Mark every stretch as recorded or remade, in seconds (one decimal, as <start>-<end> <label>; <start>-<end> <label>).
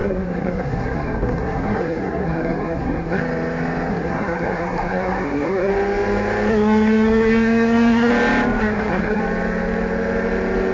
0.0-3.2 remade; 3.2-3.9 recorded; 3.9-5.7 remade; 5.7-6.5 recorded; 6.5-8.1 remade; 8.1-8.6 recorded; 8.6-9.2 remade; 9.2-10.7 recorded